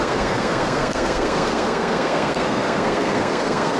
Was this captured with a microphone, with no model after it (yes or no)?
no